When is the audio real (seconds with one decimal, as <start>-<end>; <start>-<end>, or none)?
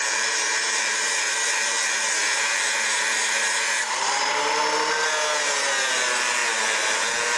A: 4.6-5.9